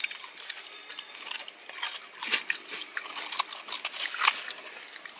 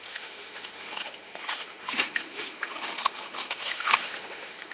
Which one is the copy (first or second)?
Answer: second